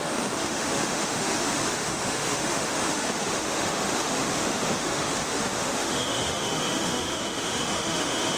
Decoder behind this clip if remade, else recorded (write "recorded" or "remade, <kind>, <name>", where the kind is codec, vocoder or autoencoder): remade, autoencoder, DAC-VAE